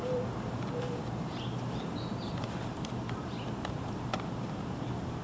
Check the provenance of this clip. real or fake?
fake